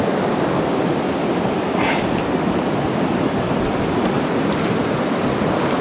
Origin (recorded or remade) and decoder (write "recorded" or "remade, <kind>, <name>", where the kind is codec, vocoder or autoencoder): recorded